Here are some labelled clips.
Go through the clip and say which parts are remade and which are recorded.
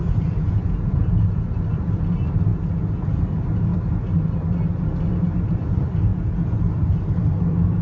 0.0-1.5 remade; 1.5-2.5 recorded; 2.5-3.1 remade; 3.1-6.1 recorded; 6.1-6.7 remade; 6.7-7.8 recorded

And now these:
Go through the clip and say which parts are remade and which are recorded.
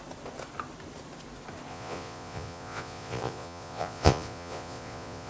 0.0-1.7 recorded; 1.7-5.3 remade